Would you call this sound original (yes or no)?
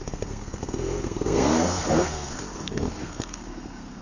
no